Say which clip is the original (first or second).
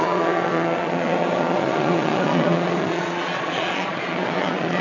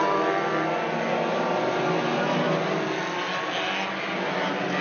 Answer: second